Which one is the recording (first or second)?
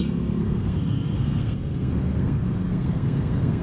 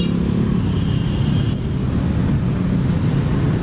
second